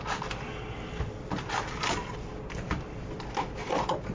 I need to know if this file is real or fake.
real